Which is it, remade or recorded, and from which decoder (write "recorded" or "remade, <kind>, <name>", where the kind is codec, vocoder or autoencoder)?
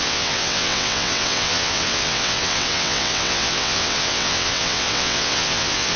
remade, vocoder, WaveNeXt